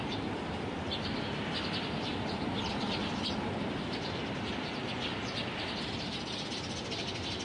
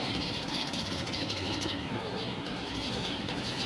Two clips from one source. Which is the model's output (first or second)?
second